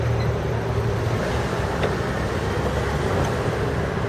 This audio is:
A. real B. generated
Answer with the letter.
A